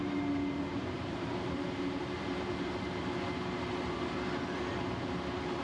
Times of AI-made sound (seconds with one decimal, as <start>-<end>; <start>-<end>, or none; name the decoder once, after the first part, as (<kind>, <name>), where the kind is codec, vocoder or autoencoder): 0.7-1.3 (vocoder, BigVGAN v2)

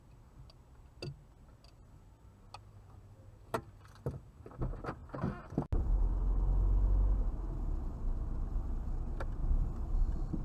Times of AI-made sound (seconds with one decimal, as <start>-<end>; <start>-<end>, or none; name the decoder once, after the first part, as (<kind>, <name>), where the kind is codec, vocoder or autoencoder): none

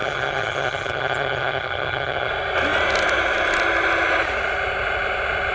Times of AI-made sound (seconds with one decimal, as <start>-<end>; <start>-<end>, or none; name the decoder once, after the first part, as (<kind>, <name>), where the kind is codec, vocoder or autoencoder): 0.0-2.3 (vocoder, HiFi-GAN)

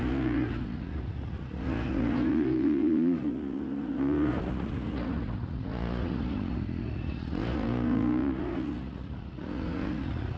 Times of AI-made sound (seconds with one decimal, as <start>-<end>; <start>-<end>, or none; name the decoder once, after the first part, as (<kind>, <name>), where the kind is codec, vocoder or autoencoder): 0.0-10.4 (vocoder, Vocos)